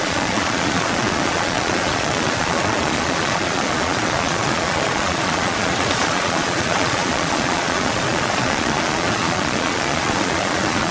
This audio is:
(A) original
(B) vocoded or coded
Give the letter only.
B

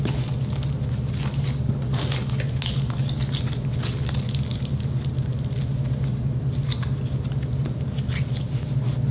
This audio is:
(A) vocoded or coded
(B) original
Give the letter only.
B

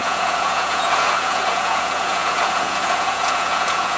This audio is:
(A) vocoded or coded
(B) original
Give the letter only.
A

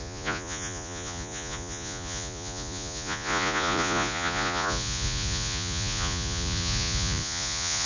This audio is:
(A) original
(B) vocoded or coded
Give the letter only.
B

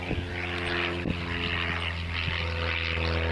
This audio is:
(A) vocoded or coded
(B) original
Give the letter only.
B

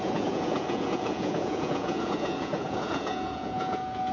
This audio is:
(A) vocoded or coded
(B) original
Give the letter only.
A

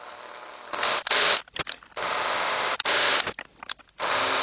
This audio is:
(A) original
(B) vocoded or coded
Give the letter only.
A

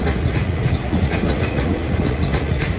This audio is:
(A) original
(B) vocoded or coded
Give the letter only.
B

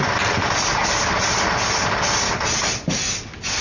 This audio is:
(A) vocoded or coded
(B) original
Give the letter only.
B